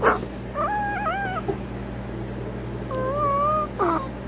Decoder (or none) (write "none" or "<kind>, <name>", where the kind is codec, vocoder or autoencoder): none